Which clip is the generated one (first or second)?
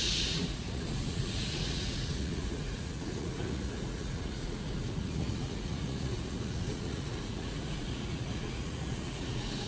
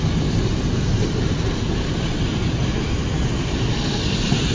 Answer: first